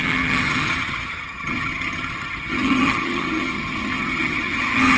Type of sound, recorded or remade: remade